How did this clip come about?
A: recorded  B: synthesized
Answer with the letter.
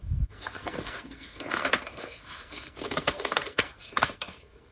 B